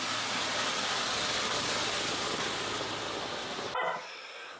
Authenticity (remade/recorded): recorded